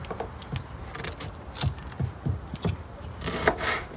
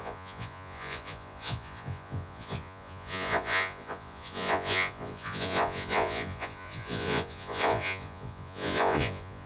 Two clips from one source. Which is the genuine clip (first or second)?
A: first